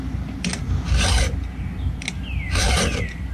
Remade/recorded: recorded